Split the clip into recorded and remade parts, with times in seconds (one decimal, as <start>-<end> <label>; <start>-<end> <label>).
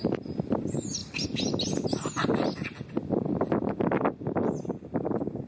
0.0-5.5 recorded